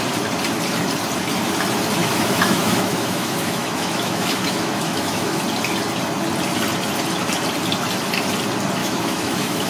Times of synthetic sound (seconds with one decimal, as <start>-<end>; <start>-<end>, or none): 2.0-5.4; 8.8-9.7